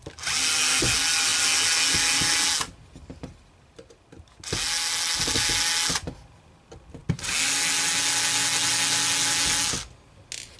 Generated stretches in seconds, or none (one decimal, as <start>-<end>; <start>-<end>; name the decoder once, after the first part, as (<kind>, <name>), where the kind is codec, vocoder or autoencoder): none